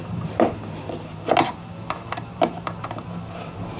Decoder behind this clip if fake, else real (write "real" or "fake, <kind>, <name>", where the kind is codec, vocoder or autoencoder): real